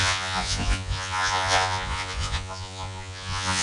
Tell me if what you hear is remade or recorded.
remade